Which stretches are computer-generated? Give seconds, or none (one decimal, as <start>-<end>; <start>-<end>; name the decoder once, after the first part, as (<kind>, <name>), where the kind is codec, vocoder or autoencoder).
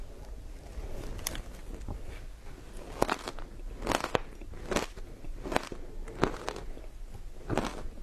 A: none